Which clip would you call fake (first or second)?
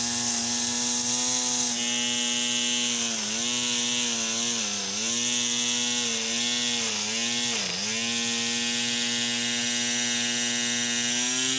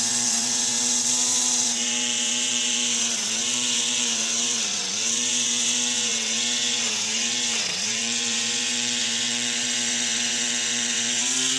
second